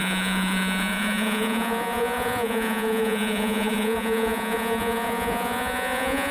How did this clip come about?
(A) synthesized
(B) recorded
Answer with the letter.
A